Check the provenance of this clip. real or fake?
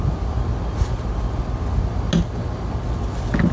real